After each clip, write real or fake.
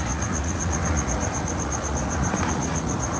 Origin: fake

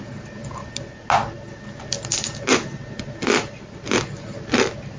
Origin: real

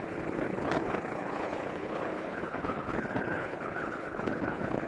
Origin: fake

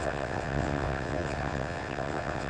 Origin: fake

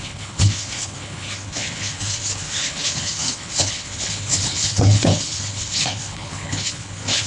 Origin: fake